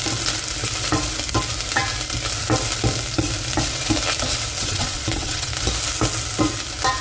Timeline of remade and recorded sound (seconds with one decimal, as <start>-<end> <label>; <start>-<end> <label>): 0.0-4.6 recorded; 4.6-5.5 remade; 5.5-7.0 recorded